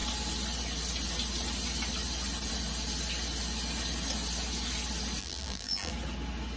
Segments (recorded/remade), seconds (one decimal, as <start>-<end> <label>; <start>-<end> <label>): 0.0-5.2 recorded; 5.2-5.9 remade; 5.9-6.6 recorded